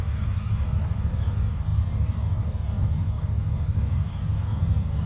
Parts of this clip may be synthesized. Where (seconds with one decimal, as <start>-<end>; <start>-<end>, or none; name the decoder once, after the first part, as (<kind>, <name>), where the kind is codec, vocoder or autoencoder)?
0.0-5.1 (codec, DAC)